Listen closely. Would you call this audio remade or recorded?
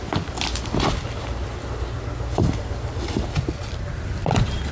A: recorded